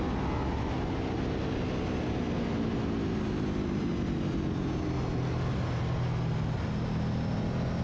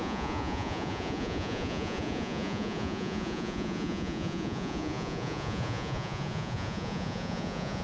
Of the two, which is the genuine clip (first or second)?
first